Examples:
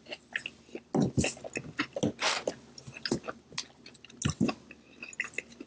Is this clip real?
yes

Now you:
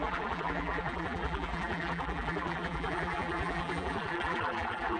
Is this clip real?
no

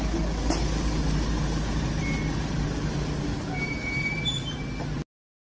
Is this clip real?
yes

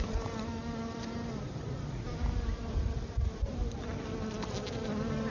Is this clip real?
yes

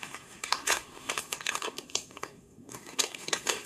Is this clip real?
no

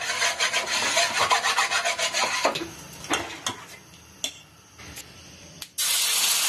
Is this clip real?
yes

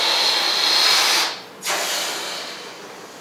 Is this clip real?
yes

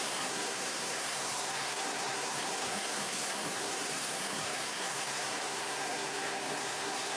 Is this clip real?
no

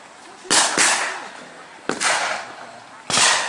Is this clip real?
yes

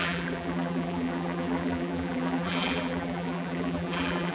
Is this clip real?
no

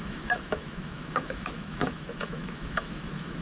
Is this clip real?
no